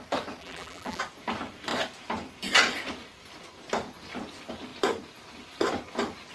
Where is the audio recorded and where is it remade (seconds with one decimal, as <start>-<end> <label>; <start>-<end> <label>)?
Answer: 0.0-0.4 recorded; 0.4-1.0 remade; 1.0-6.3 recorded